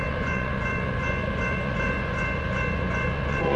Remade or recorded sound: remade